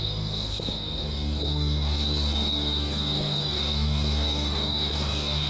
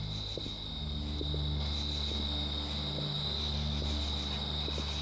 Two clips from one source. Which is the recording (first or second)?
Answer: second